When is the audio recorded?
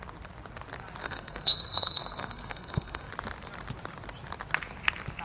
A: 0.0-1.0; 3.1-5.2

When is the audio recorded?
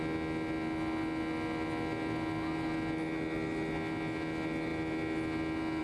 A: 0.0-5.8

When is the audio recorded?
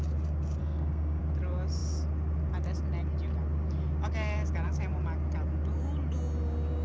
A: 0.0-0.6; 1.2-6.8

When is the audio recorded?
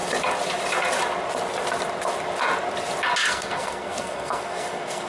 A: 0.0-3.2